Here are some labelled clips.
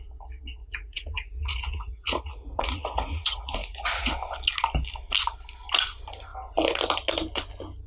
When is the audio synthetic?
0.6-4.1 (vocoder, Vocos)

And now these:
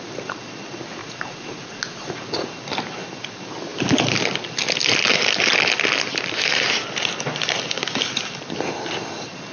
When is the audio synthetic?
1.0-2.1 (vocoder, Vocos)

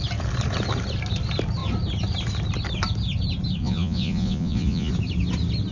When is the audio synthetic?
3.6-4.9 (vocoder, Vocos)

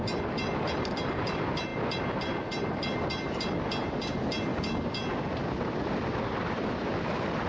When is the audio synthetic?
none

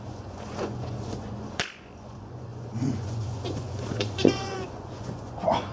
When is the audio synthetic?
0.0-5.7 (vocoder, Vocos)

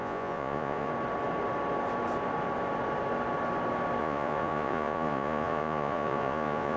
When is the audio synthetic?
0.0-0.9 (vocoder, Vocos); 4.0-6.8